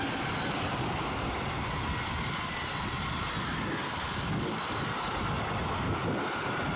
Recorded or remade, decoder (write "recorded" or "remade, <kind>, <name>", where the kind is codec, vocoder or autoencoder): recorded